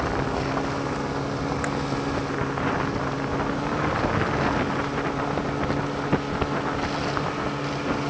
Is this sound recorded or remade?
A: recorded